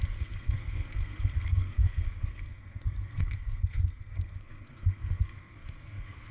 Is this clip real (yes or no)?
no